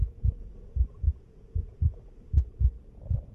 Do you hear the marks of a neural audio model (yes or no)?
yes